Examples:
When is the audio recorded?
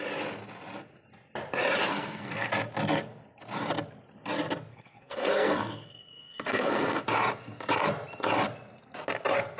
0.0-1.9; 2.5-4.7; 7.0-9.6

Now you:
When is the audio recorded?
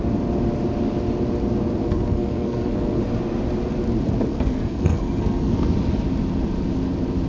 0.0-1.8; 3.0-4.3; 5.7-7.3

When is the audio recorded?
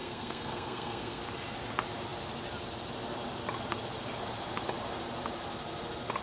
1.2-6.2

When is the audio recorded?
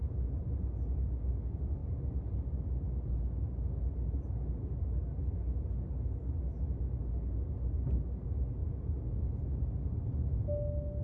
0.0-11.0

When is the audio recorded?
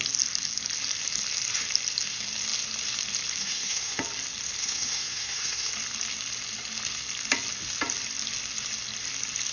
0.0-3.4; 4.0-4.6; 5.7-9.5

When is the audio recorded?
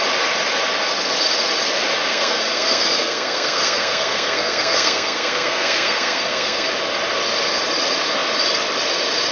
0.0-2.1; 6.7-9.3